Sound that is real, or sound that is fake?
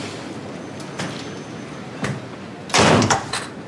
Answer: real